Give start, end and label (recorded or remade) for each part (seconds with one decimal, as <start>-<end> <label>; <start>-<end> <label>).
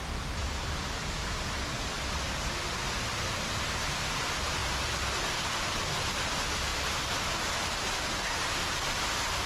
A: 0.0-9.5 recorded